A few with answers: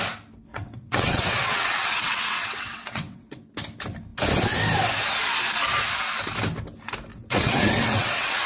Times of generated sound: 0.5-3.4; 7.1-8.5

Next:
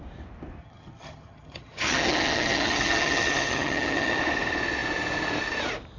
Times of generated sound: 0.6-4.2